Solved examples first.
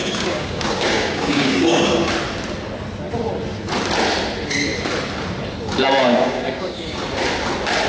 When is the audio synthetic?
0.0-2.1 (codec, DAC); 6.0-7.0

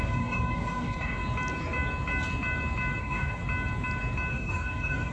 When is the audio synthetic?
0.0-1.2 (codec, DAC); 3.0-3.4; 4.3-5.1